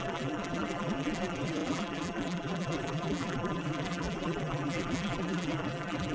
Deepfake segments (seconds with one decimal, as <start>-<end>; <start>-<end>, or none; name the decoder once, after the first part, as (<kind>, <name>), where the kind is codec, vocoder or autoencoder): 0.0-6.1 (vocoder, BigVGAN v2)